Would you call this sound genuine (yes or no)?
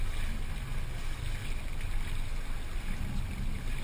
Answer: yes